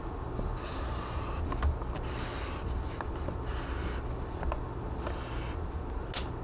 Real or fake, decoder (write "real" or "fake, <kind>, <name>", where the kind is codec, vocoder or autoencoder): real